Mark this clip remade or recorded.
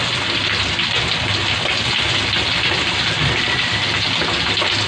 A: recorded